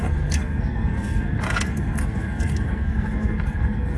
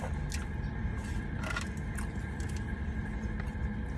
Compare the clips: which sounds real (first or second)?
second